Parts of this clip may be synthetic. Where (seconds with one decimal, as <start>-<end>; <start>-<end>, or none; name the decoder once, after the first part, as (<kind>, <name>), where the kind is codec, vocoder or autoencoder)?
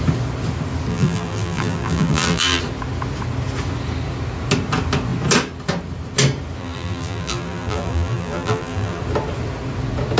0.9-2.6 (vocoder, BigVGAN v2); 6.6-9.0